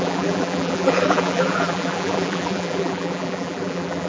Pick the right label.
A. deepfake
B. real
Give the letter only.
A